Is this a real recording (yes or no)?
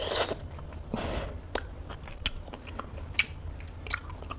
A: yes